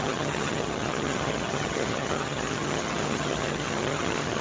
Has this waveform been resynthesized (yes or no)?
yes